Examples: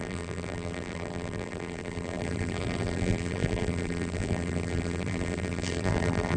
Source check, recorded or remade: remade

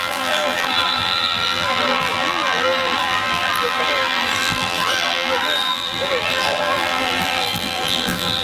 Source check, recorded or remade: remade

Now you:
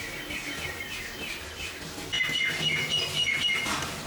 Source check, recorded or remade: recorded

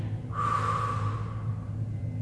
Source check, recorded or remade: recorded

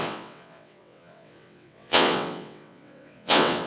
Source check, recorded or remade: remade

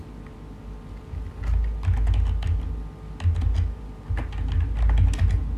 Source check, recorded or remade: recorded